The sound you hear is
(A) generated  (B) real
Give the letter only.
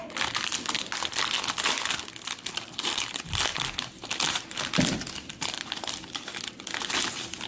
B